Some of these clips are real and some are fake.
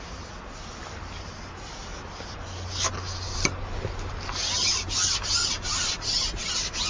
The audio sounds real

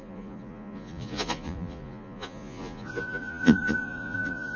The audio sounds fake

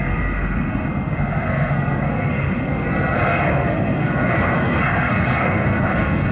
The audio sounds fake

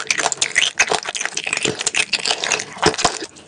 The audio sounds real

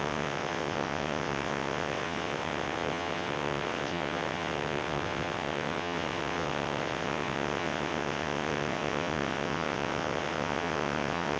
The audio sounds fake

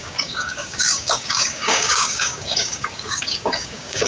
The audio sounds fake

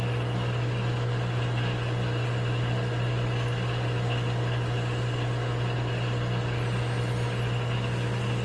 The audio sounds real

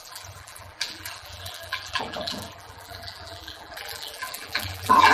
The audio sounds fake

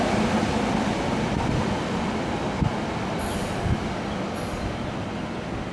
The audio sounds real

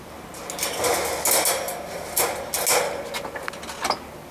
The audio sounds real